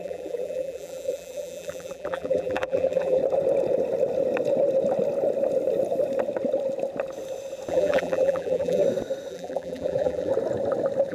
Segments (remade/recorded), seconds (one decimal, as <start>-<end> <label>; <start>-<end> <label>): 0.0-3.2 remade; 3.2-7.7 recorded; 7.7-8.8 remade; 8.8-9.3 recorded; 9.3-10.3 remade; 10.3-11.1 recorded